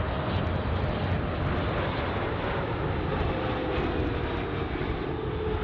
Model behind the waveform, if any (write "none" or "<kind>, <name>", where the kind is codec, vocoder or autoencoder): none